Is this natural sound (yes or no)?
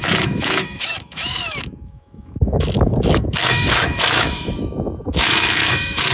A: no